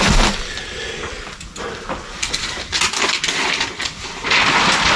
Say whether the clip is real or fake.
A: real